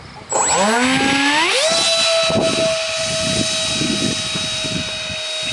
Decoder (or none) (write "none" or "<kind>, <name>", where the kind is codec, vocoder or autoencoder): none